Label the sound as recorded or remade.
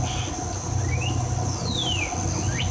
recorded